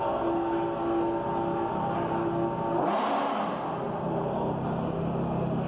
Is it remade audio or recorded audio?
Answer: recorded